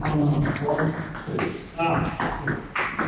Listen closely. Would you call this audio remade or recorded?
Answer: recorded